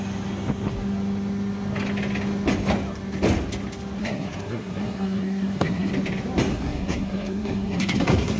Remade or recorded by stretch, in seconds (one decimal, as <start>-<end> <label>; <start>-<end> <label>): 0.0-4.0 recorded; 4.0-5.9 remade; 5.9-6.5 recorded; 6.5-8.4 remade